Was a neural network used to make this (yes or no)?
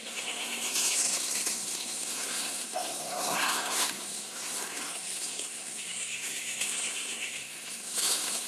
yes